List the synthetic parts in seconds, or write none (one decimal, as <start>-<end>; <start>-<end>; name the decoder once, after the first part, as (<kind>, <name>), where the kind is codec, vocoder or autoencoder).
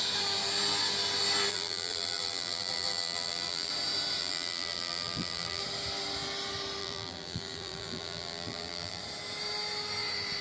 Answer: 1.5-3.7 (vocoder, BigVGAN v2); 4.2-5.6; 6.8-9.0